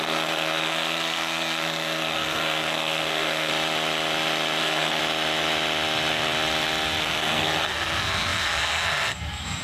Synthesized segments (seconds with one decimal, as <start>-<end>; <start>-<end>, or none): 0.0-3.5; 4.6-5.0; 7.0-9.6